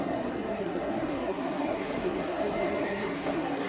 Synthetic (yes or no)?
yes